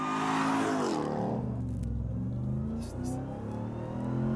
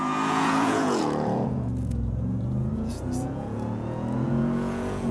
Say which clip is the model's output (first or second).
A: second